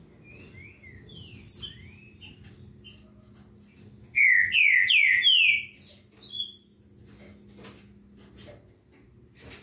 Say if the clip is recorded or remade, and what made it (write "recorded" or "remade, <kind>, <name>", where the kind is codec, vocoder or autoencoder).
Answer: recorded